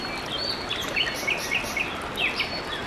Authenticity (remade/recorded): recorded